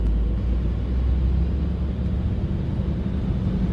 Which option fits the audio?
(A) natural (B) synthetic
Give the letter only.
A